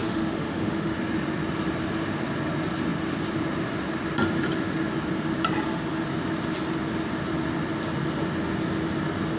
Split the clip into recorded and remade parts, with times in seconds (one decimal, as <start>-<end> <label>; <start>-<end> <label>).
0.0-1.0 remade; 1.0-9.4 recorded